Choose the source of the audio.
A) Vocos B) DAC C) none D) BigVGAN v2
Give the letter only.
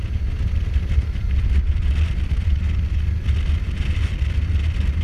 C